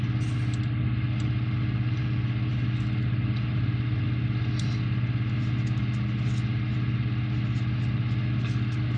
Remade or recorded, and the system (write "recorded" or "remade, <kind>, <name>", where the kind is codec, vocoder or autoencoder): recorded